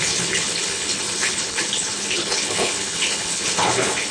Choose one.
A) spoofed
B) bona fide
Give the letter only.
A